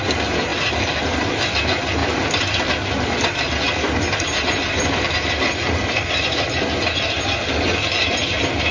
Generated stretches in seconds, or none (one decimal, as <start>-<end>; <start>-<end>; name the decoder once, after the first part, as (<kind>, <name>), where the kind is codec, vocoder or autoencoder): 0.5-1.4 (vocoder, BigVGAN v2); 2.0-6.9